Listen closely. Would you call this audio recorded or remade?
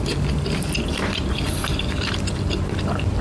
remade